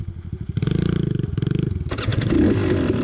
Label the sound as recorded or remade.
recorded